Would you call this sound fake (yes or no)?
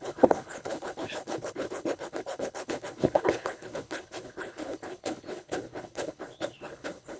yes